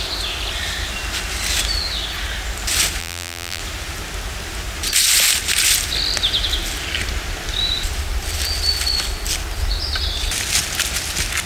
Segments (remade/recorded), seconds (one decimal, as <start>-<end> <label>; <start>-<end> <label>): 0.0-3.0 recorded; 3.0-3.6 remade; 3.6-11.5 recorded